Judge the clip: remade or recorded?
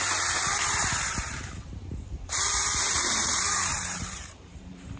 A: remade